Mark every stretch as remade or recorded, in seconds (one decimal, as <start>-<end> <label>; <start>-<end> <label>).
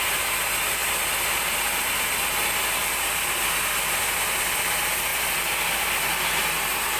0.0-7.0 recorded